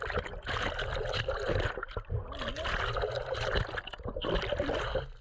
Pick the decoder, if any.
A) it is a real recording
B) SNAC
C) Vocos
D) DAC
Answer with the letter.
A